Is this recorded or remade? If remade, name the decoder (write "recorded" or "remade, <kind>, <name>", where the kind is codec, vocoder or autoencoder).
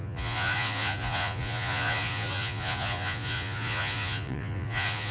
remade, vocoder, Vocos